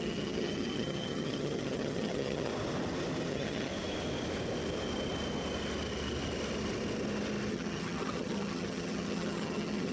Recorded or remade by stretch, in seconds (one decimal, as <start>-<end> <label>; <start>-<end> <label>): 0.0-2.5 remade; 2.5-3.3 recorded; 3.3-3.7 remade; 3.7-7.5 recorded; 7.5-9.9 remade